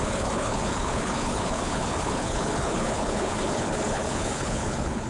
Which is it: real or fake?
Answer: fake